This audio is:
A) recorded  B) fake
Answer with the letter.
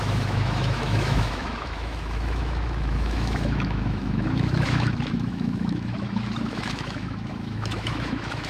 B